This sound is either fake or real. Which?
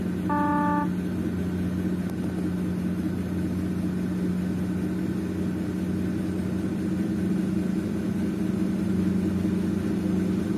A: real